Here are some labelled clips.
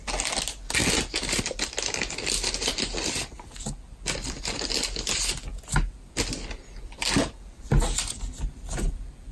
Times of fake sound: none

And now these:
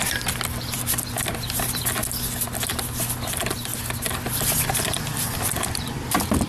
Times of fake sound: 0.0-2.0; 2.7-3.7; 4.3-6.5

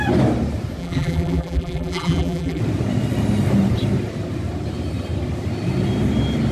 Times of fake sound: 0.8-2.6

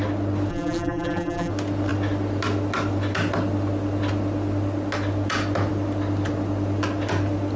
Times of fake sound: 0.5-1.5

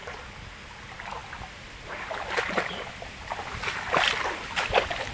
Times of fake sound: none

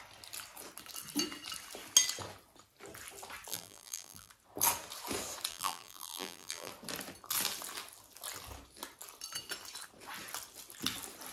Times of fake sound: 3.5-4.3; 5.5-6.7